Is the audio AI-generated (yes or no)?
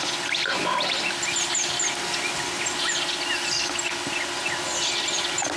no